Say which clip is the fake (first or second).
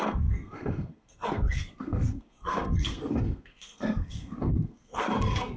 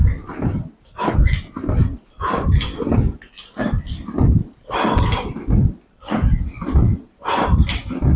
first